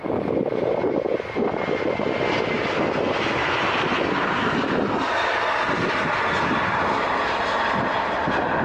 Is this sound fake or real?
real